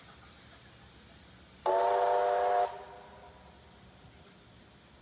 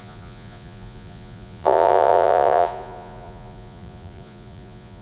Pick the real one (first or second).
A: first